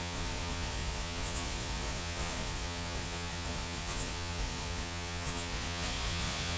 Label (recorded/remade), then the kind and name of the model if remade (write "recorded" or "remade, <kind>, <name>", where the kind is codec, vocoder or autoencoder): remade, vocoder, Vocos